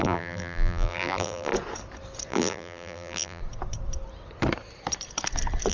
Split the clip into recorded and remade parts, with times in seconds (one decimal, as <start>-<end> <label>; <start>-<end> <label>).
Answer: 0.0-1.5 remade; 1.5-2.3 recorded; 2.3-3.4 remade; 3.4-5.7 recorded